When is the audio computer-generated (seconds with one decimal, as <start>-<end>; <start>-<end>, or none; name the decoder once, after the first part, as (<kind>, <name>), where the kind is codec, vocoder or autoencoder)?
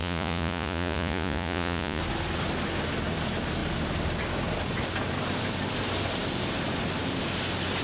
0.0-2.0 (vocoder, Vocos)